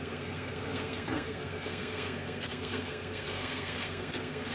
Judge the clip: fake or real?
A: fake